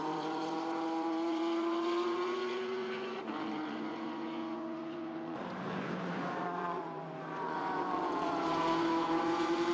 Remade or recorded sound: remade